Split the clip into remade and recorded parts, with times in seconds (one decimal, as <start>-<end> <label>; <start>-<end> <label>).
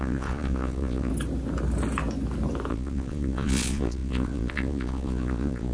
0.0-1.1 remade; 1.1-2.7 recorded; 2.7-5.7 remade